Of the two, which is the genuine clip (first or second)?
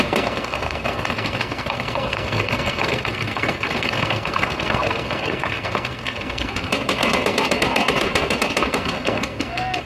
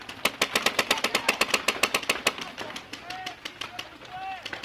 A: second